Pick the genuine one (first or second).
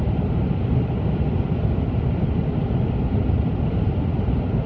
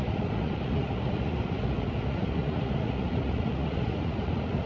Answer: first